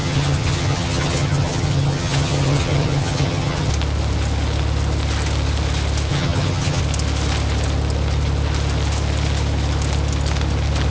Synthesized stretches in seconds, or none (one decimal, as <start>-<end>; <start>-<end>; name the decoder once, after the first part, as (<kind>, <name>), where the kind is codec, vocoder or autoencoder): 0.0-3.7 (vocoder, HiFi-GAN); 6.1-6.8